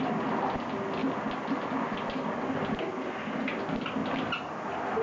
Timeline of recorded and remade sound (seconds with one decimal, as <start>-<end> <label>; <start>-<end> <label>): 0.0-5.0 recorded